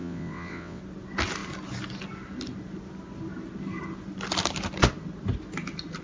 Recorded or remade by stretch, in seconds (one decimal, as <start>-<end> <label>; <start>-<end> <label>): 0.0-0.8 remade; 0.8-6.0 recorded